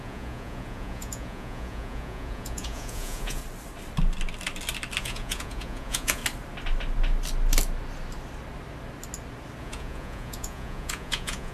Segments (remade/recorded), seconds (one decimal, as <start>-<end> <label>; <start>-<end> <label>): 0.0-3.4 remade; 3.4-5.0 recorded; 5.0-6.2 remade; 6.2-9.6 recorded; 9.6-11.5 remade